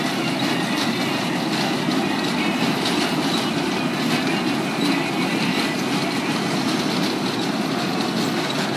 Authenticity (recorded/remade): recorded